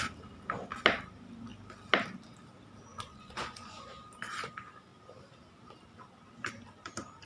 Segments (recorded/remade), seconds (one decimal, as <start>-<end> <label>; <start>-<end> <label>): 0.0-2.9 recorded; 2.9-3.8 remade; 3.8-7.3 recorded